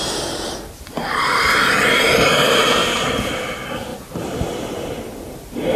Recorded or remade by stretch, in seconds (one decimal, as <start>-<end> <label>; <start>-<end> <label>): 0.0-2.8 recorded; 2.8-3.3 remade; 3.3-3.9 recorded; 3.9-5.8 remade